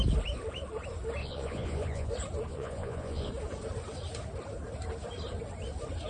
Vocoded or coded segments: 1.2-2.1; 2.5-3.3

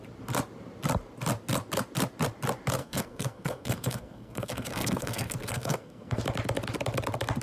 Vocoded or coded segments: 2.8-6.2

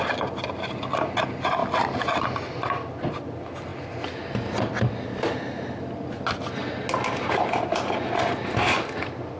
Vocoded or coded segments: none